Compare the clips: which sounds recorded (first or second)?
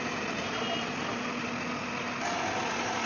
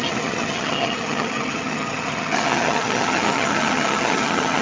first